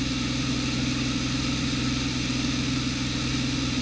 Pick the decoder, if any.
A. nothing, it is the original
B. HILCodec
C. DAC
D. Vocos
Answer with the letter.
A